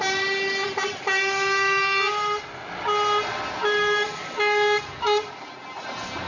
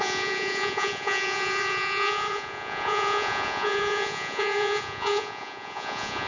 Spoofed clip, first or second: second